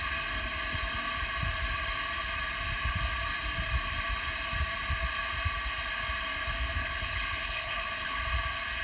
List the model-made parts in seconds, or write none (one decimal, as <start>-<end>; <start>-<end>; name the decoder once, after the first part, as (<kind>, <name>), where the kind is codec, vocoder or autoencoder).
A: 6.8-8.2 (codec, HILCodec)